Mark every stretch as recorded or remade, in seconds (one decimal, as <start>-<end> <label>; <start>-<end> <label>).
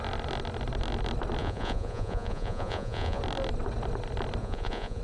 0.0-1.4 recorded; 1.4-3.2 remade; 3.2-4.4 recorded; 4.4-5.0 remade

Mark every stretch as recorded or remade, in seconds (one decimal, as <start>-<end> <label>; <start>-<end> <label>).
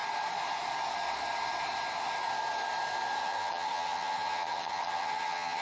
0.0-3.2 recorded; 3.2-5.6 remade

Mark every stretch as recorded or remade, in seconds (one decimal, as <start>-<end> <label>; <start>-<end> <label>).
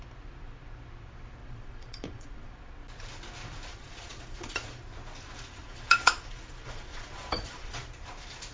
0.0-1.4 recorded; 1.4-2.5 remade; 2.5-3.7 recorded; 3.7-4.8 remade; 4.8-5.6 recorded; 5.6-7.7 remade; 7.7-8.5 recorded